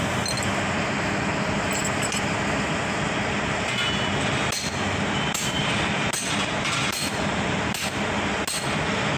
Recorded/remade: recorded